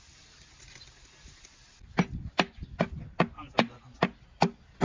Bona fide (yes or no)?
yes